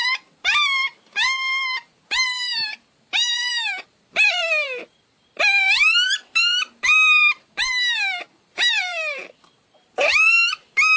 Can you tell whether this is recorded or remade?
remade